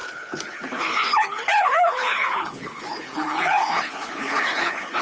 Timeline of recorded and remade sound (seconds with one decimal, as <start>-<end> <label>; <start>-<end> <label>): 0.0-5.0 remade